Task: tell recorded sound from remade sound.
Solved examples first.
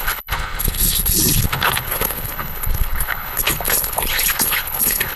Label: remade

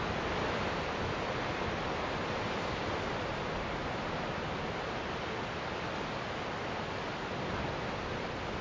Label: recorded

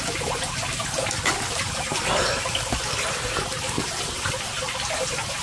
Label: recorded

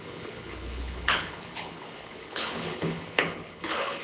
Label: remade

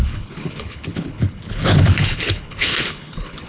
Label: remade